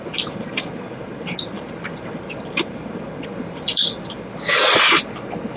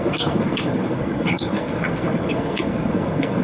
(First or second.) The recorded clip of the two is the first